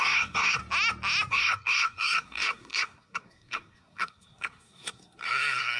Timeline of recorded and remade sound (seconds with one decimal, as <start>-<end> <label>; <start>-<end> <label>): 0.0-0.6 remade; 0.6-1.3 recorded; 1.3-5.8 remade